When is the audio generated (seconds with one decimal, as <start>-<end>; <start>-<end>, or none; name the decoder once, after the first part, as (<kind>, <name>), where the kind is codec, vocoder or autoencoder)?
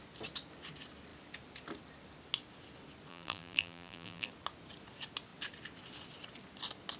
3.1-4.3 (vocoder, BigVGAN v2)